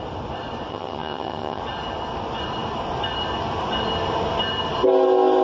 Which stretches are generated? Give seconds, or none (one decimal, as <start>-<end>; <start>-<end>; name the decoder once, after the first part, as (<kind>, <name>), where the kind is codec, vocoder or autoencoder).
0.7-1.6 (vocoder, HiFi-GAN)